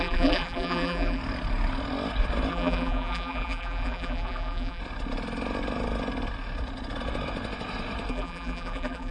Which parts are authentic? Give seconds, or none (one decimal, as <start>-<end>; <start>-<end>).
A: 1.2-2.5; 4.8-8.1